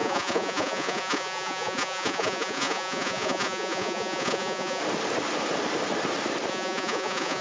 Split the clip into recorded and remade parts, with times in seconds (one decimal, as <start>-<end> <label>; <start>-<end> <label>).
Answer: 0.0-4.8 remade; 4.8-6.5 recorded; 6.5-7.4 remade